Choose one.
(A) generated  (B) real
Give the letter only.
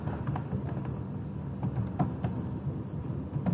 B